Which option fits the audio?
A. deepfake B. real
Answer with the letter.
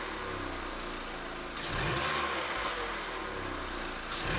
B